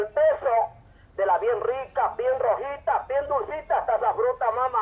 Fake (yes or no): no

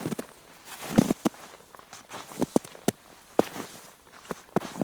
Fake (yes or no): yes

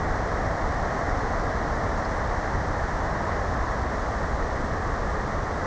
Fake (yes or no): no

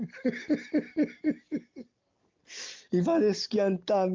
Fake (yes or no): no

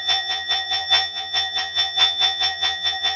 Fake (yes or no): yes